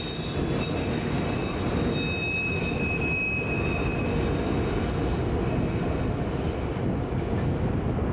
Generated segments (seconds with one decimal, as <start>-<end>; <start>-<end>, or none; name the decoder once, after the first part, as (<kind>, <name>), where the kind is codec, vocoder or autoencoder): none